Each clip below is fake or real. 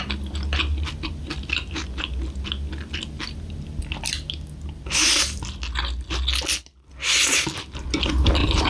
real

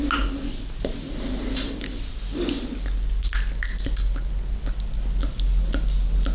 real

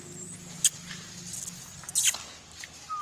real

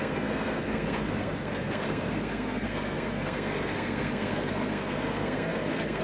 fake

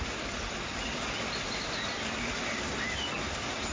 real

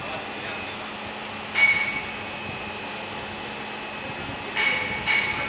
real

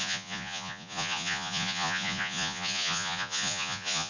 fake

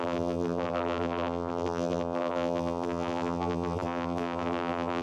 fake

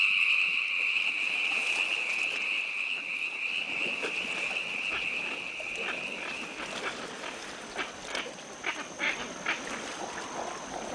real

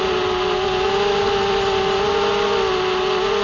real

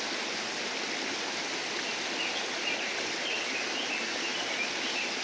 real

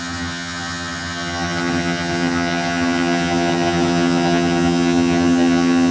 fake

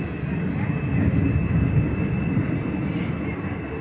real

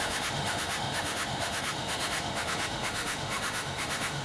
fake